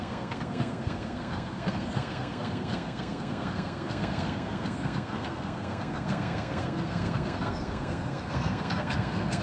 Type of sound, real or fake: fake